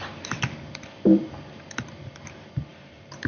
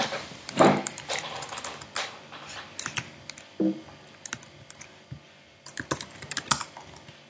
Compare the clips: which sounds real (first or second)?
second